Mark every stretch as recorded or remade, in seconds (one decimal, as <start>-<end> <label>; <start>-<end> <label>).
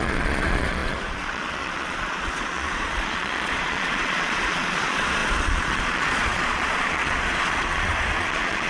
0.0-8.7 remade